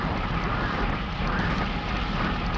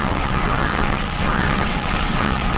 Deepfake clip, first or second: second